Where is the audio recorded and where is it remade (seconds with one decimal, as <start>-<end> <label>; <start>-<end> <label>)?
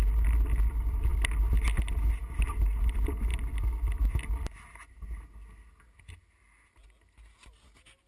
0.0-8.1 recorded